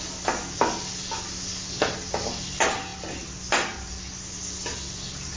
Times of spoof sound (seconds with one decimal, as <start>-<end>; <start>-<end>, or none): none